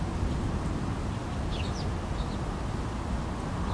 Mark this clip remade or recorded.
recorded